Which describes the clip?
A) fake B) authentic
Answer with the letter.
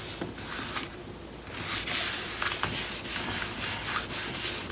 B